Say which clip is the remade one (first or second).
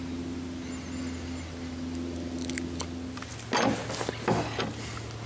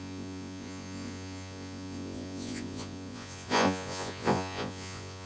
second